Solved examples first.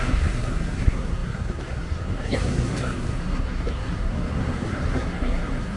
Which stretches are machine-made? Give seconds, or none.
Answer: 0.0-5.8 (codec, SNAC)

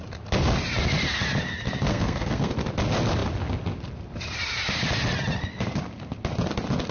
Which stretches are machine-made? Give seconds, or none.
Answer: 1.9-2.5 (codec, SNAC)

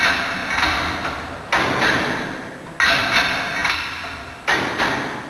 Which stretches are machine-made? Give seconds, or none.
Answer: none

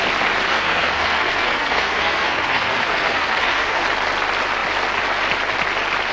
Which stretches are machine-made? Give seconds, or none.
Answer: 0.5-3.8 (codec, SNAC)

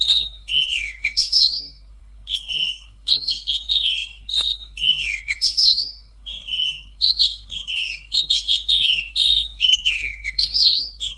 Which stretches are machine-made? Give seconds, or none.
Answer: 0.0-11.2 (codec, SNAC)

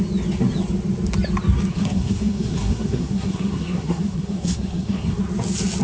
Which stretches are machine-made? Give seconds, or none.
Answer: 1.7-5.2 (codec, SNAC)